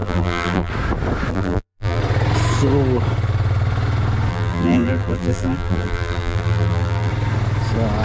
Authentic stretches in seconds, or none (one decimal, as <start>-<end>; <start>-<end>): 0.7-1.3; 2.0-4.3; 7.1-8.0